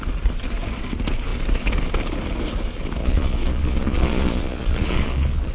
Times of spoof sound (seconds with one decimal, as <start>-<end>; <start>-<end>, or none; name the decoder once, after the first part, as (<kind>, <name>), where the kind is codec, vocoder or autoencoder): 3.0-5.5 (vocoder, Vocos)

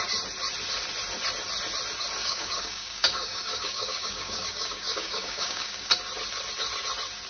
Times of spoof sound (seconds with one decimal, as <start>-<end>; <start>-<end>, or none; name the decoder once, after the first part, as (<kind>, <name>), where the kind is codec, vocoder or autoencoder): 2.2-5.9 (codec, DAC)

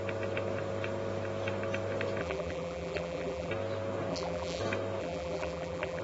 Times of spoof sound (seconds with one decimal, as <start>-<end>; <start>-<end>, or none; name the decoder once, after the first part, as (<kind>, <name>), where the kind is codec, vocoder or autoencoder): 2.2-3.5 (vocoder, BigVGAN v2); 4.1-4.6; 5.0-6.0

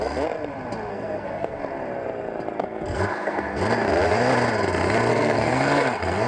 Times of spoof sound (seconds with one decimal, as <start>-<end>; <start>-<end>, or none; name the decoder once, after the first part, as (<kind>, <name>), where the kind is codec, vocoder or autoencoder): 0.9-1.6 (codec, SNAC); 2.6-3.6; 5.1-6.3